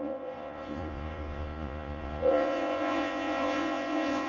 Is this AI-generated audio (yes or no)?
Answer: yes